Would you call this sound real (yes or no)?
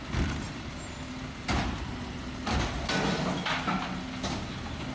yes